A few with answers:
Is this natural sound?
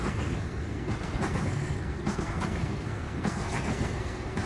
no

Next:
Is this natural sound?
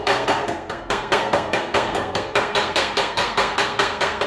no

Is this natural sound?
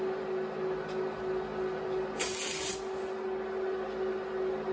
yes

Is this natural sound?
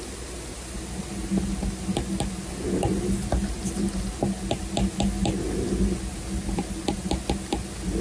yes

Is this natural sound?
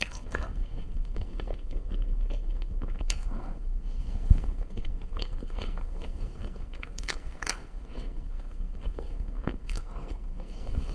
no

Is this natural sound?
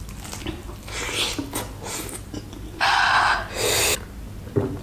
yes